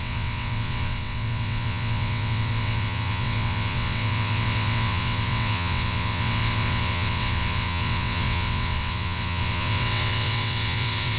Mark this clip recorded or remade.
remade